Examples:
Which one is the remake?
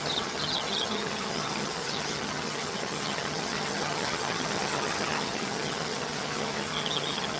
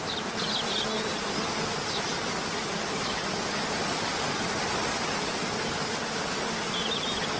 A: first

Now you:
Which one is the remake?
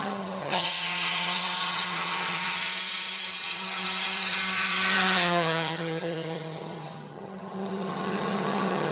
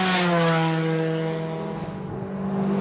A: first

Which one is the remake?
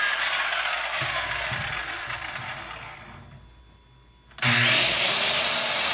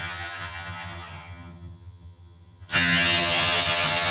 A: second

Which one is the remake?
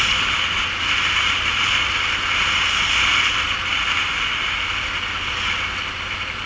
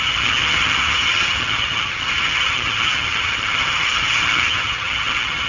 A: second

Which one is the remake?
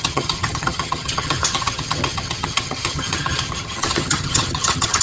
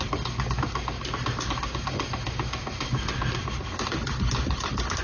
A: first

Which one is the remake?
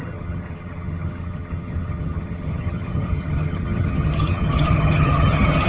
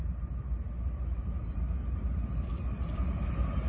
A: first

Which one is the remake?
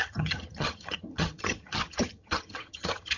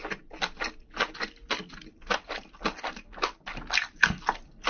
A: first